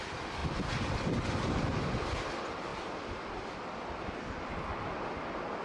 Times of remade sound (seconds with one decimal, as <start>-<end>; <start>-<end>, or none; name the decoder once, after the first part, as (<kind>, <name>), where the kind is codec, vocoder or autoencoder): none